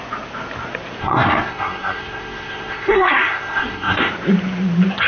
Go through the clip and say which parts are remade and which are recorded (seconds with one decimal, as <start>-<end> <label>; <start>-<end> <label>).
0.0-1.0 recorded; 1.0-4.1 remade; 4.1-5.1 recorded